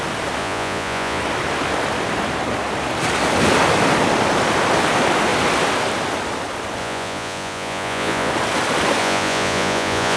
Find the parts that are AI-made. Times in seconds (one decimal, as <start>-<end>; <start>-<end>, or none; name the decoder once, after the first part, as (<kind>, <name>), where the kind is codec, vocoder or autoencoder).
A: 0.4-1.2 (vocoder, Vocos); 6.8-8.3; 9.0-10.2